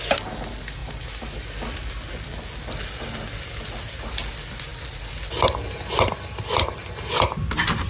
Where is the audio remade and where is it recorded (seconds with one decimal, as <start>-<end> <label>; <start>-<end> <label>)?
0.0-7.9 recorded